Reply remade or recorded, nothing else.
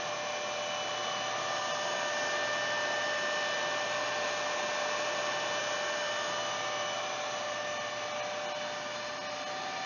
recorded